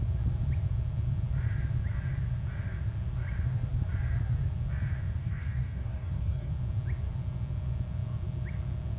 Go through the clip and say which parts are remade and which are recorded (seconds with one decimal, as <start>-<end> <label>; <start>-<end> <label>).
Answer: 0.0-5.2 recorded; 5.2-6.5 remade; 6.5-9.0 recorded